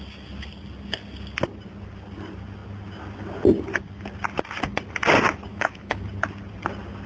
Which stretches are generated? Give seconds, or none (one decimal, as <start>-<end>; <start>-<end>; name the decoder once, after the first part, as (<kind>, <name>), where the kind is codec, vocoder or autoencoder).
5.5-6.0 (autoencoder, DAC-VAE)